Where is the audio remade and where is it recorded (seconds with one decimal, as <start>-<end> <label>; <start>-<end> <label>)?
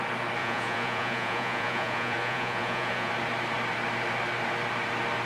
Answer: 0.0-0.4 recorded; 0.4-3.1 remade; 3.1-5.3 recorded